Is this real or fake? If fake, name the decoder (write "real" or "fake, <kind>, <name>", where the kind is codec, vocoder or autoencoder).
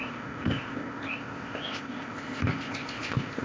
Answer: fake, codec, ZipCodec